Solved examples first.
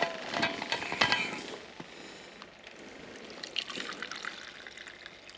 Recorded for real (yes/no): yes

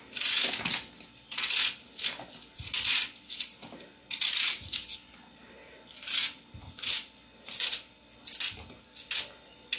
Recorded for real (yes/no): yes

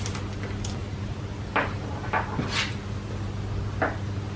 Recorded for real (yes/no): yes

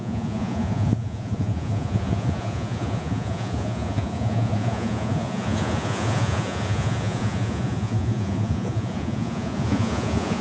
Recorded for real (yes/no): no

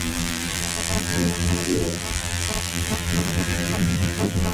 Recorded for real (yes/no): no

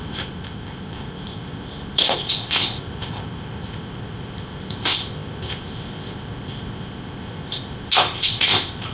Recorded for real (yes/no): no